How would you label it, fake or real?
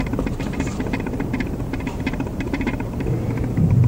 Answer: fake